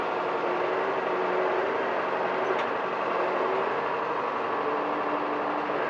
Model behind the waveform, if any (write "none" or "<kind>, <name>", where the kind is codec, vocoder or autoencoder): none